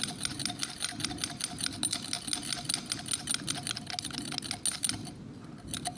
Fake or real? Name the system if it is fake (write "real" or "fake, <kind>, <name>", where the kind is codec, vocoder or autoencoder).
real